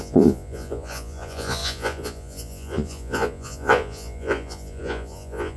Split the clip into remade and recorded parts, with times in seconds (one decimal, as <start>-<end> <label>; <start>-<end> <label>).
0.0-5.6 remade